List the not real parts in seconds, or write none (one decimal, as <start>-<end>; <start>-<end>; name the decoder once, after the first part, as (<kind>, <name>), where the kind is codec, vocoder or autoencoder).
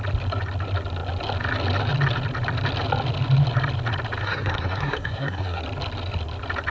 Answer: 4.2-5.6 (codec, SNAC)